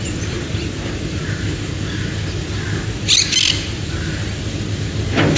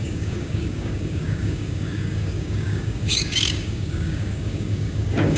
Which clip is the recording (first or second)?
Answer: first